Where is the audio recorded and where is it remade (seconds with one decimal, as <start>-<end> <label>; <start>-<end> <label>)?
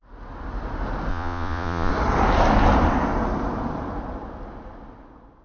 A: 0.0-1.1 recorded; 1.1-1.9 remade; 1.9-5.4 recorded